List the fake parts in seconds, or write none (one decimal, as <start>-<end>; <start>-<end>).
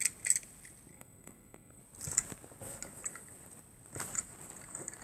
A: 0.9-1.8